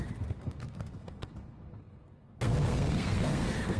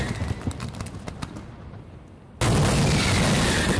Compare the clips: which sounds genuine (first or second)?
second